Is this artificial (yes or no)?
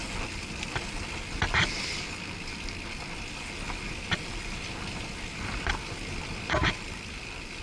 no